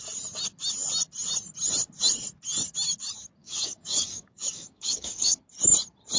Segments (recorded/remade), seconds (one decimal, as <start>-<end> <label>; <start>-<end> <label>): 0.0-3.4 recorded; 3.4-5.4 remade; 5.4-6.2 recorded